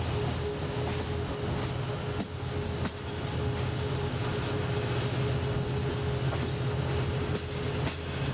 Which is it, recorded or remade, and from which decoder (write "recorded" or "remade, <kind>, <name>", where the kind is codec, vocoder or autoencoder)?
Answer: recorded